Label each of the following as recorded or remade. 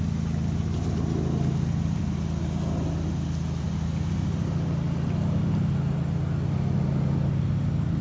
recorded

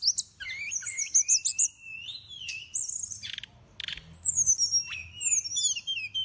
recorded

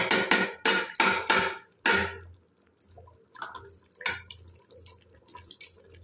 recorded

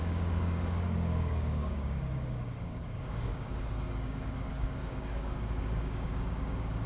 remade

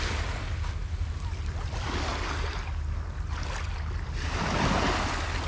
recorded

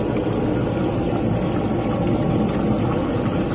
recorded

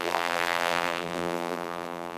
remade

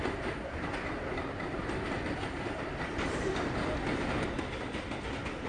recorded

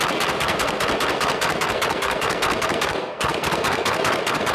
remade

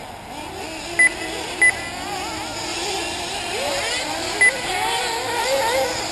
recorded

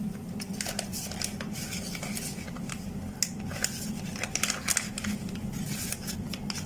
recorded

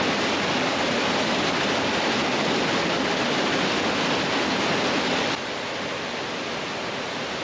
recorded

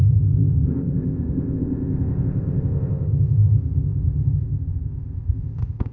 remade